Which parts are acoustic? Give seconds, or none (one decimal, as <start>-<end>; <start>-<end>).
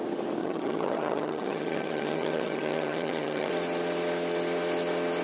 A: 0.0-0.4; 3.5-5.2